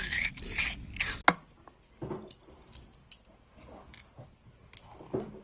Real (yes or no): yes